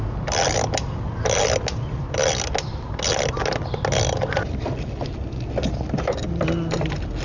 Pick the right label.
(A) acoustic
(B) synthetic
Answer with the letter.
A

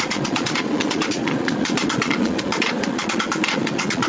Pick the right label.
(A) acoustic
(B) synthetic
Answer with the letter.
B